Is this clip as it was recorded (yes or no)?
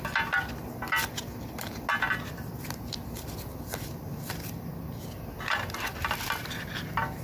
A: yes